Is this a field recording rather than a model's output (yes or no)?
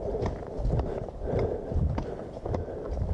yes